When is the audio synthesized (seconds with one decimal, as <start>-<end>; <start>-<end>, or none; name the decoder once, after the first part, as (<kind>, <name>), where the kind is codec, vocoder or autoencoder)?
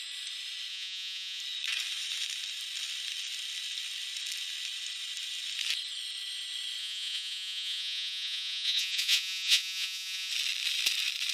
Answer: 0.7-1.4 (vocoder, Vocos); 6.8-10.3